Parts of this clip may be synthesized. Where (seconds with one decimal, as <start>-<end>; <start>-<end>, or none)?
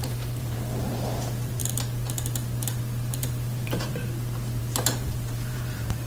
0.0-1.6; 3.1-4.0; 4.6-6.1